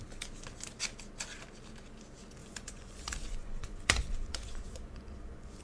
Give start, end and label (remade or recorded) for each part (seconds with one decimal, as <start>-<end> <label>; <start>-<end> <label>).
0.0-2.4 recorded; 2.4-5.6 remade